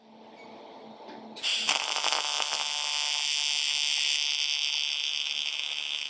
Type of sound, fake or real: real